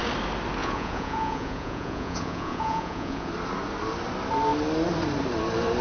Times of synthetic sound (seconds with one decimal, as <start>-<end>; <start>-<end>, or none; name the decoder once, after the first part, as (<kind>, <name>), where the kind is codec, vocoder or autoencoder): 0.6-3.3 (vocoder, Vocos)